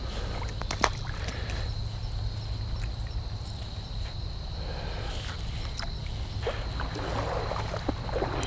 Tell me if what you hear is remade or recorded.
recorded